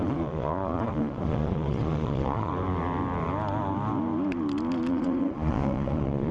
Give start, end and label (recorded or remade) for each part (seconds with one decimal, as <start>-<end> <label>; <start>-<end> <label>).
0.0-2.5 remade; 2.5-4.9 recorded; 4.9-6.3 remade